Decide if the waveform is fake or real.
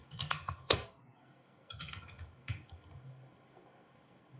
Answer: fake